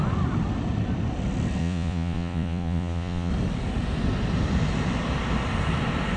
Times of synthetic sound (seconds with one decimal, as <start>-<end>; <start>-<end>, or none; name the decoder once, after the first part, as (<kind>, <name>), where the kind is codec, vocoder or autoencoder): 1.6-3.3 (vocoder, Vocos)